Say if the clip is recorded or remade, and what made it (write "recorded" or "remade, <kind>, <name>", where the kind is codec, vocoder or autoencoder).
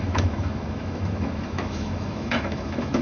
remade, autoencoder, DAC-VAE